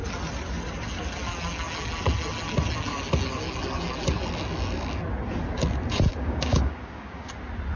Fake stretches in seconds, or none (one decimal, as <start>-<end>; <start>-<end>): 6.1-7.3